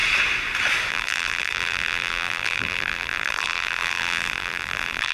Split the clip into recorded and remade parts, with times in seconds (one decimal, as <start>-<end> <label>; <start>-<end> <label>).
0.0-0.9 recorded; 0.9-5.1 remade